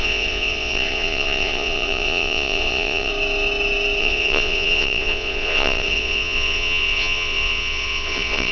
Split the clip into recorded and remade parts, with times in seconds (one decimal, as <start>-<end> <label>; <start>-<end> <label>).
0.0-3.1 remade; 3.1-4.0 recorded; 4.0-8.5 remade